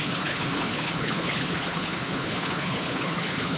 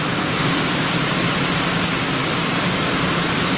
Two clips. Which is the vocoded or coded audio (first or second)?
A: first